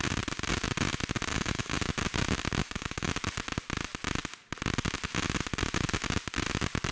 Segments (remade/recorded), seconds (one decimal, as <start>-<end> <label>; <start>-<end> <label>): 0.0-1.3 recorded; 1.3-1.9 remade; 1.9-2.6 recorded; 2.6-3.1 remade; 3.1-6.9 recorded